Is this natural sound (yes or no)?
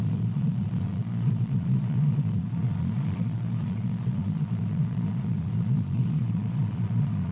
no